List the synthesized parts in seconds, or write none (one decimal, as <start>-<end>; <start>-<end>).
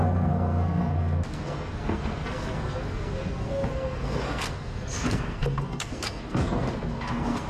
0.0-7.5